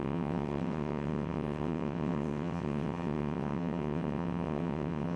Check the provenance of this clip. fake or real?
fake